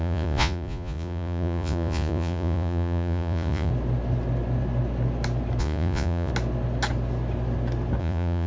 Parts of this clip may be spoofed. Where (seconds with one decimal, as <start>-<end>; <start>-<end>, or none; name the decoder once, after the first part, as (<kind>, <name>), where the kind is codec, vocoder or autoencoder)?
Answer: 0.0-3.7 (vocoder, Vocos); 5.6-6.3; 8.0-8.5